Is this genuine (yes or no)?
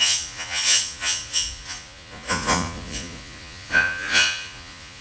no